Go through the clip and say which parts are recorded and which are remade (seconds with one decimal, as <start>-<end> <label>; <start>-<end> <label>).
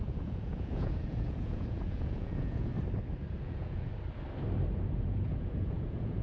0.0-2.7 remade; 2.7-3.4 recorded; 3.4-3.9 remade; 3.9-4.9 recorded; 4.9-6.2 remade